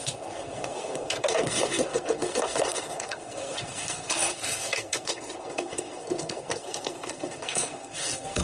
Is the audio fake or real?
fake